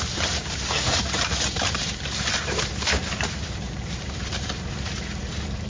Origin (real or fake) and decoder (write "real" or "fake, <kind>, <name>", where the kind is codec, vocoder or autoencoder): fake, vocoder, BigVGAN v2